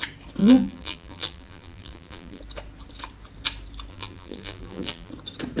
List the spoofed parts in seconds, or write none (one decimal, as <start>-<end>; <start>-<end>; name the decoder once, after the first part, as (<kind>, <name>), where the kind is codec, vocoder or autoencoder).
0.4-2.4 (vocoder, BigVGAN v2); 3.9-5.1